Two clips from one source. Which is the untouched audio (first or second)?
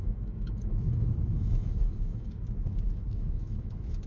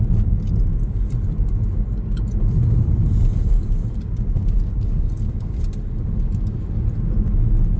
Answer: second